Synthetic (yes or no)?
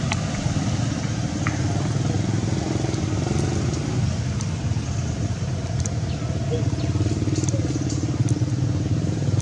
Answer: no